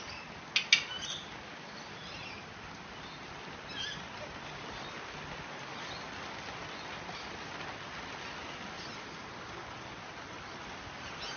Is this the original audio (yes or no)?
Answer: yes